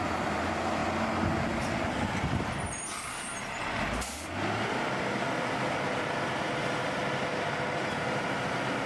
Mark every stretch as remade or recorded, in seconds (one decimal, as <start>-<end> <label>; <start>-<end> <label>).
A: 0.0-0.8 remade; 0.8-5.4 recorded; 5.4-7.0 remade; 7.0-7.9 recorded; 7.9-8.9 remade